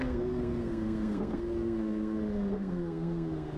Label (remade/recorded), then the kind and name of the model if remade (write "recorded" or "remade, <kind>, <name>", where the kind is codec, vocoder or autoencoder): remade, codec, SNAC